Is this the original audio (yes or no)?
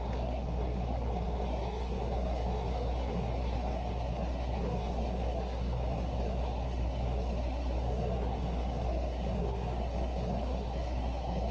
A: no